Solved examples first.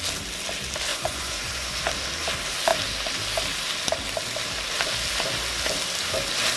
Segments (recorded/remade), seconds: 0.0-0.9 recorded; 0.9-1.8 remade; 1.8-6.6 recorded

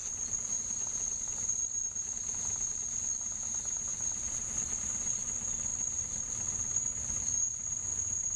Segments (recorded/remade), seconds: 0.0-5.7 recorded; 5.7-6.8 remade; 6.8-8.4 recorded

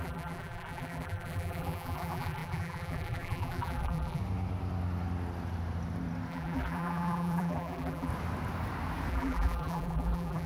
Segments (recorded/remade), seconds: 0.0-4.2 remade; 4.2-6.3 recorded; 6.3-8.1 remade; 8.1-9.1 recorded; 9.1-10.5 remade

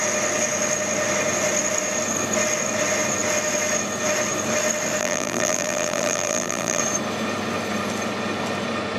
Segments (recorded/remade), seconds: 0.0-5.0 recorded; 5.0-6.8 remade; 6.8-9.0 recorded

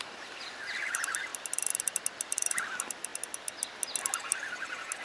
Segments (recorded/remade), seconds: 0.0-1.3 remade; 1.3-2.0 recorded; 2.0-3.1 remade; 3.1-4.0 recorded; 4.0-5.0 remade

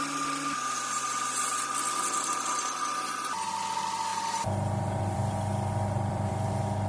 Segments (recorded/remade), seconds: 0.0-4.1 recorded; 4.1-6.3 remade; 6.3-6.9 recorded

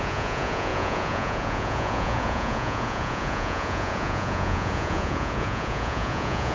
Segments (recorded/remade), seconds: 0.0-6.5 remade